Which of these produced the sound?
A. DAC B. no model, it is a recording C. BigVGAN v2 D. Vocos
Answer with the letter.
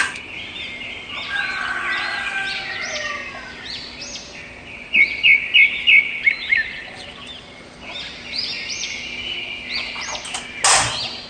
B